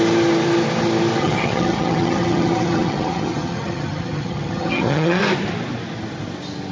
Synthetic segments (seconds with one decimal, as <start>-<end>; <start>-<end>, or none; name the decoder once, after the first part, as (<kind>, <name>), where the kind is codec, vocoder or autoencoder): 1.2-5.2 (vocoder, HiFi-GAN)